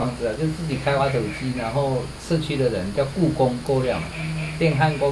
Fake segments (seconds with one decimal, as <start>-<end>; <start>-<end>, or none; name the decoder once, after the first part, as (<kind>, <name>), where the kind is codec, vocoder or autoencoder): 0.0-1.5 (autoencoder, DAC-VAE); 3.1-5.1